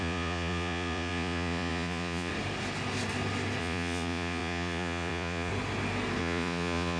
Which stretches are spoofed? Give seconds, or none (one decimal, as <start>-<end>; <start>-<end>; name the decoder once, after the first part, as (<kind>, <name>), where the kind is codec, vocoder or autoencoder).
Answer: 0.0-2.3 (vocoder, Vocos); 3.6-5.5; 6.2-7.0